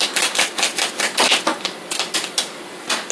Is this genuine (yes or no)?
yes